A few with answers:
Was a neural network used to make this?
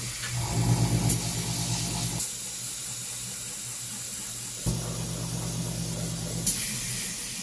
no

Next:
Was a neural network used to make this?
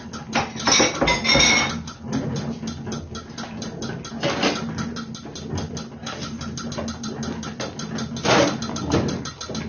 no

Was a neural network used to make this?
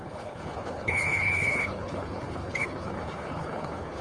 yes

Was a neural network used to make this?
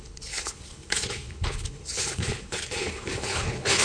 yes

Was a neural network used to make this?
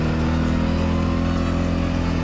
no